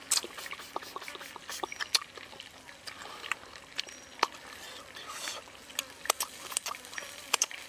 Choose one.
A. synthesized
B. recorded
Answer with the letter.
B